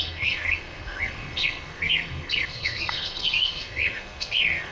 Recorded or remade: remade